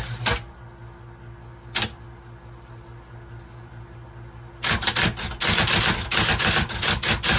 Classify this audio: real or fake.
real